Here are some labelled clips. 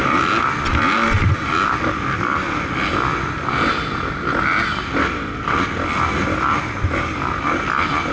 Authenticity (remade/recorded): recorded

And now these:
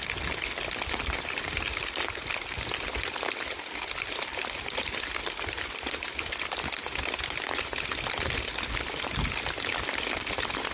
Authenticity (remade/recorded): recorded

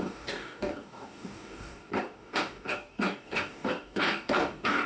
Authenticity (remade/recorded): remade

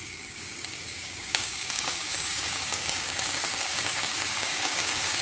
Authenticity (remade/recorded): remade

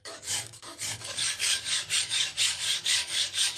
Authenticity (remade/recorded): remade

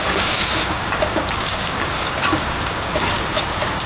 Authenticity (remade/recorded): remade